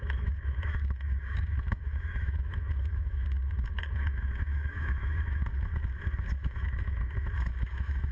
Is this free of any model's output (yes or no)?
no